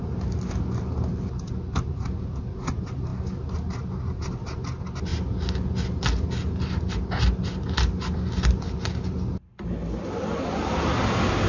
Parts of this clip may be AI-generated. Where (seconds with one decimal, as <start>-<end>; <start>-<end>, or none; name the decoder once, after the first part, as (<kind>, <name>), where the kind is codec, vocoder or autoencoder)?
none